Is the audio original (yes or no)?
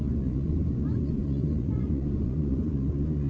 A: no